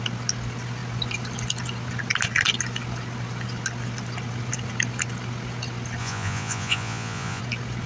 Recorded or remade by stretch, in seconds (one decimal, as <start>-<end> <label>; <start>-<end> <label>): 0.0-6.0 recorded; 6.0-7.4 remade; 7.4-7.9 recorded